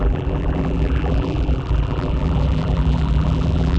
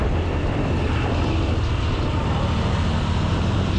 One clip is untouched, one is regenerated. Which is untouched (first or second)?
second